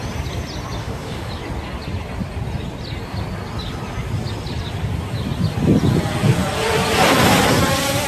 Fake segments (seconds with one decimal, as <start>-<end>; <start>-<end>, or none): 0.8-1.3